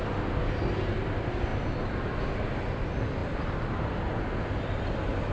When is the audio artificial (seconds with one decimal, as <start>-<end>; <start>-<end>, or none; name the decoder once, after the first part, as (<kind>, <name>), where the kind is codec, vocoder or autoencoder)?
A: none